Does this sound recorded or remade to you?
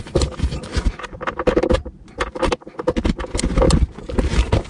recorded